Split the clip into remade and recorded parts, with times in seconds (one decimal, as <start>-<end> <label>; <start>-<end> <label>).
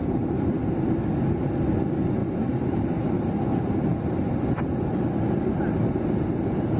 0.0-1.7 remade; 1.7-2.2 recorded; 2.2-3.3 remade; 3.3-3.9 recorded; 3.9-6.8 remade